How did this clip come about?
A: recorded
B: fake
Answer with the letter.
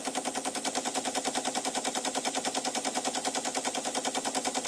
A